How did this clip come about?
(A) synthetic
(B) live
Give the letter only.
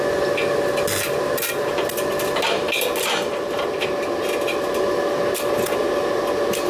B